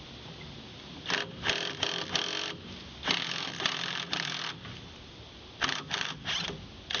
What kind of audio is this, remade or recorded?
recorded